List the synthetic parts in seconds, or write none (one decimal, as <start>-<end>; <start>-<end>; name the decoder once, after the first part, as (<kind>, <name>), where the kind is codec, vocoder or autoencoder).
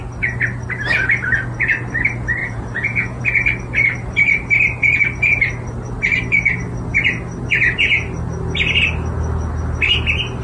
2.4-3.2 (vocoder, Vocos)